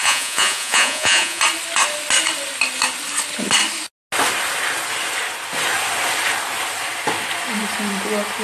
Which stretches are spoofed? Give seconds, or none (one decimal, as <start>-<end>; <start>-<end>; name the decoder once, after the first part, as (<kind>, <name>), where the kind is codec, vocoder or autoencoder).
0.0-1.4 (vocoder, Vocos)